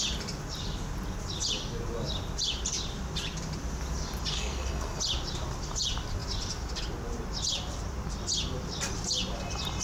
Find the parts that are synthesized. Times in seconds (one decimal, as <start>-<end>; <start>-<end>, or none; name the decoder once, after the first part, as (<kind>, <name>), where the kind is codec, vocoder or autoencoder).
4.3-5.0 (codec, SNAC)